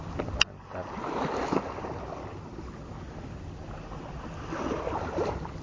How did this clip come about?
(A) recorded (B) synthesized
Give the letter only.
A